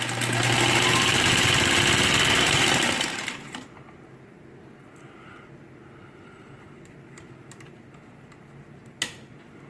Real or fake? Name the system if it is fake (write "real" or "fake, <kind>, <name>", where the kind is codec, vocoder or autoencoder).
real